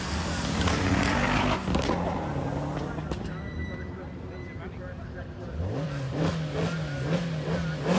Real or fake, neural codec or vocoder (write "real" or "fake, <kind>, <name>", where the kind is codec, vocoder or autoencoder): real